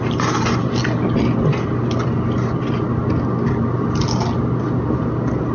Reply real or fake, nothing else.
real